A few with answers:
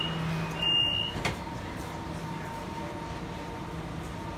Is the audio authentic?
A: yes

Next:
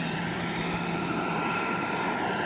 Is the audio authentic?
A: no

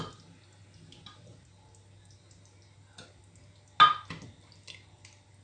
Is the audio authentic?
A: yes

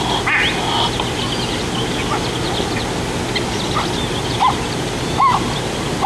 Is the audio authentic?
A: yes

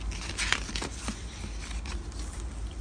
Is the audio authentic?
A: yes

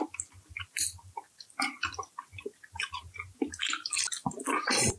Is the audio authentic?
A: yes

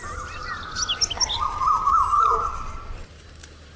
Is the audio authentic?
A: yes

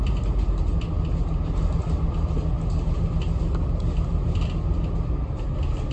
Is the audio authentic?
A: yes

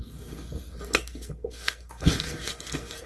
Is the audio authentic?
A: no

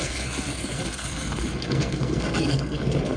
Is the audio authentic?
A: no